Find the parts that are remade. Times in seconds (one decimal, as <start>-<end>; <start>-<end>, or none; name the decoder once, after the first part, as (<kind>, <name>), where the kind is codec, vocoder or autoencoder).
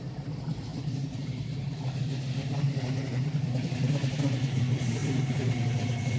0.7-1.2 (vocoder, BigVGAN v2); 5.0-5.6